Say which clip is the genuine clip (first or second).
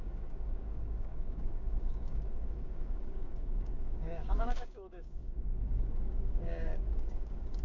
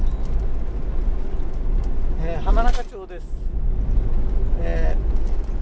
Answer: second